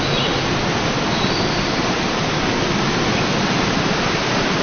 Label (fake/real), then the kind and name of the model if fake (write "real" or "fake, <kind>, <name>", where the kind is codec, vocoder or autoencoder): fake, vocoder, BigVGAN v2